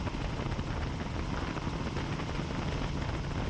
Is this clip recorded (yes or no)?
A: yes